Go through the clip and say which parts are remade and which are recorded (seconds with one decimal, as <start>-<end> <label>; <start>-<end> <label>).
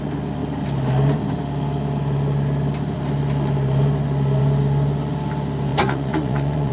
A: 0.0-5.7 recorded; 5.7-6.7 remade